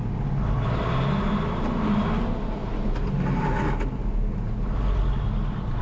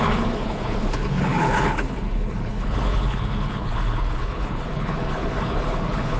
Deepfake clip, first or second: second